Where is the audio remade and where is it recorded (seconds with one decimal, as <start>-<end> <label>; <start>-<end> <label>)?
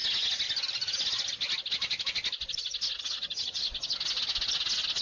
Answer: 0.0-3.0 recorded; 3.0-3.6 remade; 3.6-5.0 recorded